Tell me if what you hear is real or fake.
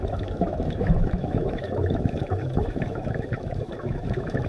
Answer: fake